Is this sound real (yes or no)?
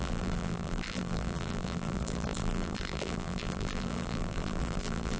no